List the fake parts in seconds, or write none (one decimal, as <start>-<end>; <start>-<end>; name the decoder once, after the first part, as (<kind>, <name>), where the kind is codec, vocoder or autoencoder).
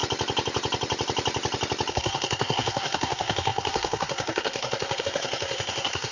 1.9-6.1 (codec, SNAC)